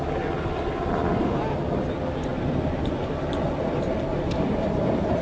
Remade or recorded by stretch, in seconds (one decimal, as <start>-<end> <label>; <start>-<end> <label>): 0.0-1.1 recorded; 1.1-1.6 remade; 1.6-4.1 recorded; 4.1-5.2 remade